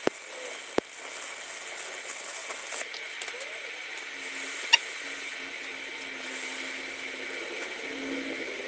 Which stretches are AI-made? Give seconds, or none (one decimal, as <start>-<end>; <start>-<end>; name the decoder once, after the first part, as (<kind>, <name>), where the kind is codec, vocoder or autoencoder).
none